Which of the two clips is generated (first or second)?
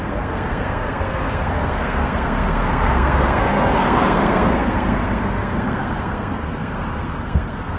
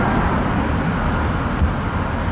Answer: first